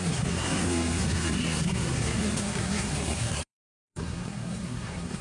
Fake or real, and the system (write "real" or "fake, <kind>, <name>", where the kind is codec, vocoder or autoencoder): fake, codec, SNAC